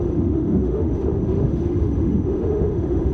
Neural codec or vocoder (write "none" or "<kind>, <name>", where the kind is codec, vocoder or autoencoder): autoencoder, DAC-VAE